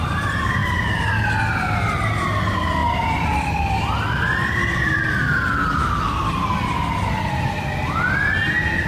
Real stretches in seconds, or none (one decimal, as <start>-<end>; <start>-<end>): 0.0-8.9